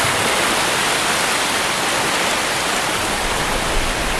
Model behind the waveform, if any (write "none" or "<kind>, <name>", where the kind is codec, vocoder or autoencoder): none